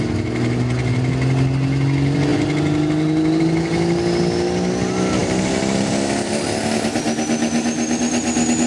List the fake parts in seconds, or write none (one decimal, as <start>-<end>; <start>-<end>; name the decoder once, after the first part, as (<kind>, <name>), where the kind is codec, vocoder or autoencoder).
5.2-7.0 (vocoder, BigVGAN v2)